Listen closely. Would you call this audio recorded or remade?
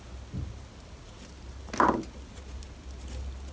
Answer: recorded